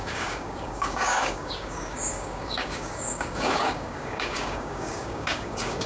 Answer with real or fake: fake